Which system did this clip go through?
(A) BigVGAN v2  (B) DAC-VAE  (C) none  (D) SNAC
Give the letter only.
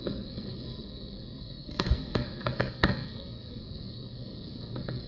D